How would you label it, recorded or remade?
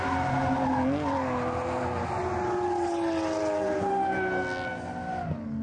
recorded